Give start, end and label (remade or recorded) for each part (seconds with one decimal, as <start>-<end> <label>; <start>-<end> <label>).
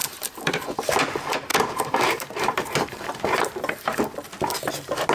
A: 0.0-1.1 remade; 1.1-1.5 recorded; 1.5-4.0 remade; 4.0-5.1 recorded